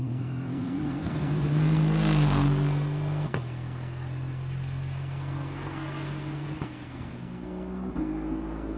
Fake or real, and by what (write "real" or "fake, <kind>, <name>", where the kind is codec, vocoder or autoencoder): fake, codec, SNAC